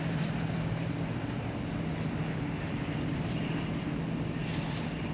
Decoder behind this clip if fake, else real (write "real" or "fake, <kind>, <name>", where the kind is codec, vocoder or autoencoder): real